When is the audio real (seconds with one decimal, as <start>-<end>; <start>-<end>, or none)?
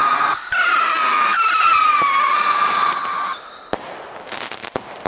0.0-5.1